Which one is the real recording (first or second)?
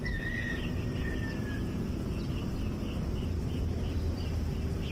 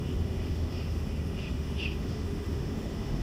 first